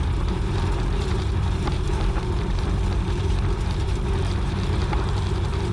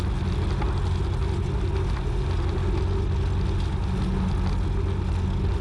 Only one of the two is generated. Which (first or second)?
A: first